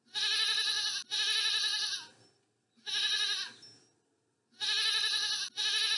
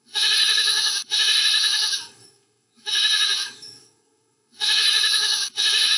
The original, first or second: first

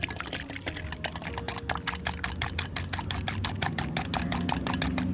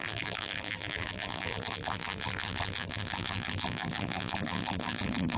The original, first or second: first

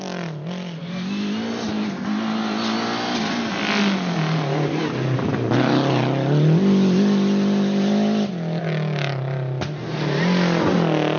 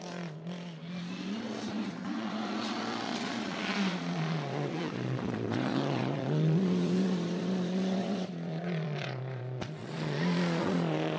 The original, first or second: first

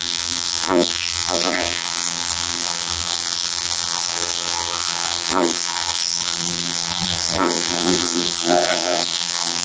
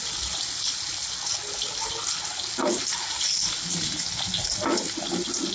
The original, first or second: second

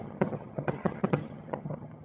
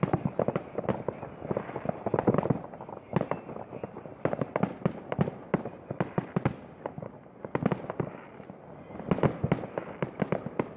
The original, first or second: second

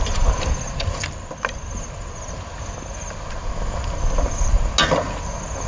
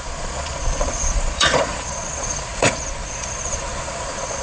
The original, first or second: first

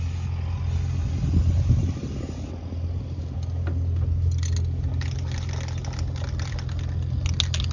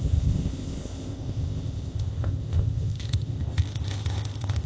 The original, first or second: first